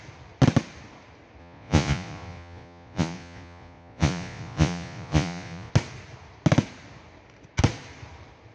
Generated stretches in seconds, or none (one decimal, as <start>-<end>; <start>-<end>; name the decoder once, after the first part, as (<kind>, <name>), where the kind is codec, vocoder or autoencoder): 1.4-5.7 (vocoder, Vocos)